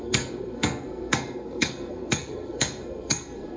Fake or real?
fake